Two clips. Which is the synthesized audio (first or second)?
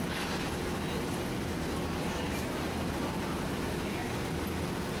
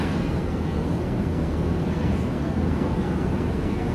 second